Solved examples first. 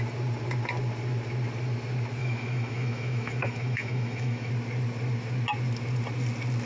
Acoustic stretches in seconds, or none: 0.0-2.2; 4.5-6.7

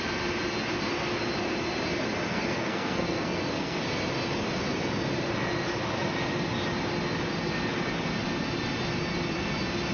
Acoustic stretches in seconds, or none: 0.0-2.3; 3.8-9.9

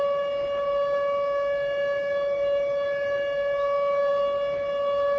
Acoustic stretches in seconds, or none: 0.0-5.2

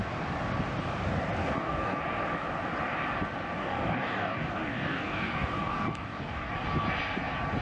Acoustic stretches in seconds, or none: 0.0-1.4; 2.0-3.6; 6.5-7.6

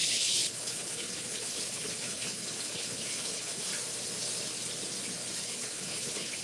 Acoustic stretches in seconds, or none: 3.7-5.4

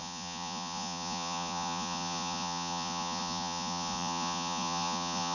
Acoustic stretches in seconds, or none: none

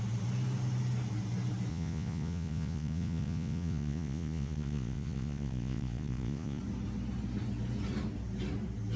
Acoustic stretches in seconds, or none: 0.0-1.7; 6.6-9.0

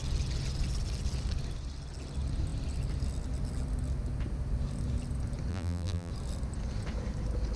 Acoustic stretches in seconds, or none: 0.0-5.5; 6.1-7.6